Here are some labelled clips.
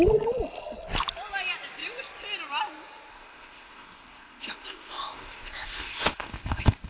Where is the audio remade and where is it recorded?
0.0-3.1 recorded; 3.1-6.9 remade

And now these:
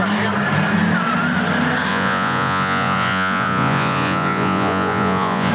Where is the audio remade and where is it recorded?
0.0-1.9 recorded; 1.9-5.5 remade

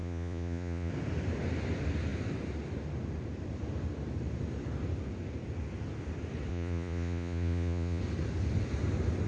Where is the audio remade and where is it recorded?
0.0-0.9 remade; 0.9-6.5 recorded; 6.5-8.0 remade; 8.0-9.3 recorded

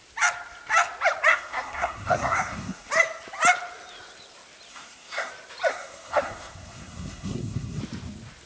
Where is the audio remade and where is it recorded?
0.0-1.3 recorded; 1.3-2.9 remade; 2.9-4.7 recorded; 4.7-5.3 remade; 5.3-5.7 recorded; 5.7-7.8 remade; 7.8-8.5 recorded

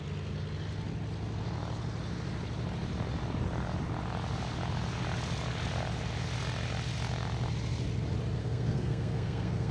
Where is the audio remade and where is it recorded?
0.0-8.4 recorded; 8.4-9.7 remade